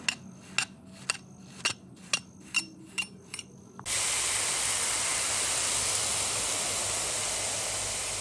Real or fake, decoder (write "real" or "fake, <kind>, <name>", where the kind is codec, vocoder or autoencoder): real